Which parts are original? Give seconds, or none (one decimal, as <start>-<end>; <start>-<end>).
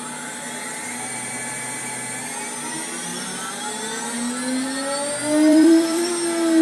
0.0-3.1; 3.6-5.5; 6.1-6.6